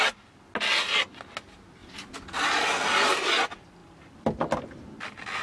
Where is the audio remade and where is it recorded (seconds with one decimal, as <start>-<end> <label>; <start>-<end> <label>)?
0.0-5.4 recorded